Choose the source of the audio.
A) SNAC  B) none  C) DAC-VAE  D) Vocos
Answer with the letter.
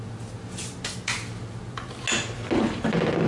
B